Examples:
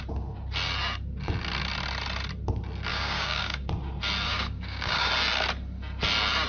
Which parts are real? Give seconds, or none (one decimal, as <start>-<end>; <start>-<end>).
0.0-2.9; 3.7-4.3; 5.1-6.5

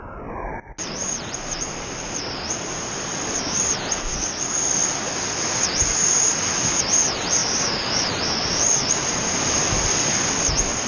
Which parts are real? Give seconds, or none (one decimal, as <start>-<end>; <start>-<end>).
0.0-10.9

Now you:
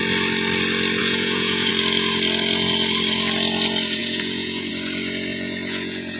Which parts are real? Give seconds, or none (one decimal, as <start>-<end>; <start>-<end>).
0.0-1.0; 1.7-4.0; 4.7-5.3

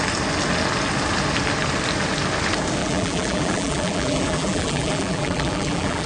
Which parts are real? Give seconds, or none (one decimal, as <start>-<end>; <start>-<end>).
0.0-2.8

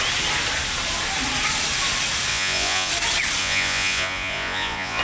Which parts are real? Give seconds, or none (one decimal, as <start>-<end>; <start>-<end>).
0.0-2.3; 2.9-3.4